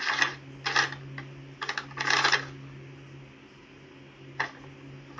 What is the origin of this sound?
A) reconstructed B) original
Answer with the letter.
B